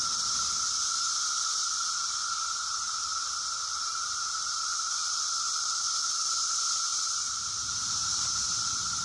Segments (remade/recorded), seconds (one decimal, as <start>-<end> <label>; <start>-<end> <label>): 0.0-2.7 recorded; 2.7-6.2 remade; 6.2-9.0 recorded